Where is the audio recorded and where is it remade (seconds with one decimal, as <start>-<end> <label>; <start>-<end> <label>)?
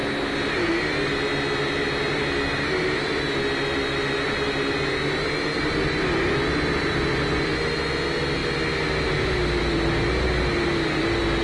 0.0-11.4 recorded